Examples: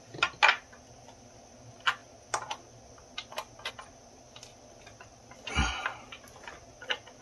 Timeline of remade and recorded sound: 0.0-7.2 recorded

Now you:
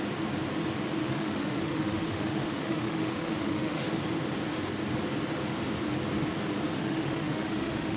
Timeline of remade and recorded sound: 0.0-1.0 recorded; 1.0-4.0 remade; 4.0-6.7 recorded; 6.7-8.0 remade

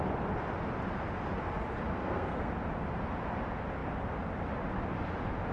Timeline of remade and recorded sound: 0.0-1.9 recorded; 1.9-2.5 remade; 2.5-5.5 recorded

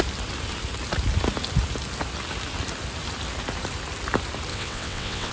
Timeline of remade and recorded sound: 0.0-4.5 recorded; 4.5-5.3 remade

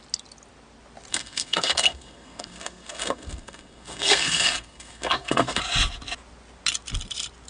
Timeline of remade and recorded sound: 0.0-1.1 recorded; 1.1-5.6 remade; 5.6-7.5 recorded

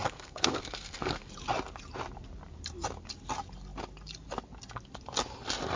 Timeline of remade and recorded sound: 0.0-1.3 remade; 1.3-5.8 recorded

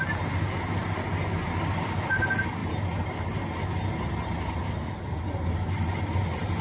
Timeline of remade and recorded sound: 0.0-6.6 recorded

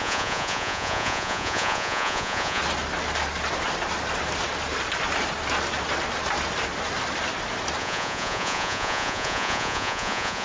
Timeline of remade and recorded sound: 0.0-2.6 remade; 2.6-7.8 recorded; 7.8-10.4 remade